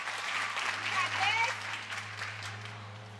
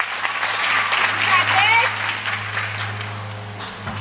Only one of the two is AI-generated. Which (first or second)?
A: first